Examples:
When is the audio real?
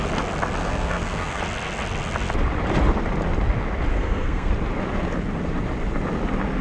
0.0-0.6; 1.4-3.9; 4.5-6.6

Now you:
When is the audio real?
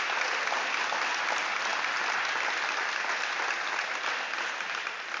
0.0-5.2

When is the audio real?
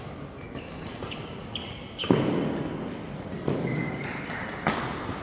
0.0-5.2